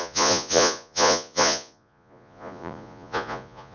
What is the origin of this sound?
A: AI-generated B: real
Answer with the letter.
A